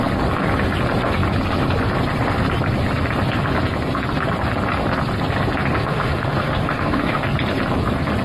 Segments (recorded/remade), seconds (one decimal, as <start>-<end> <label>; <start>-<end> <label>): 0.0-5.8 recorded; 5.8-7.2 remade; 7.2-8.2 recorded